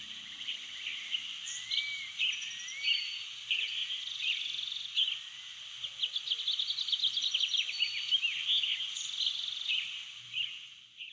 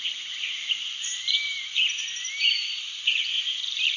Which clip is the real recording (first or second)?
first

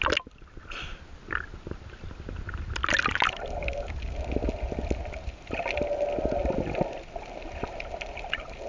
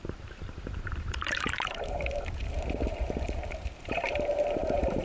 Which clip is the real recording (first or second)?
first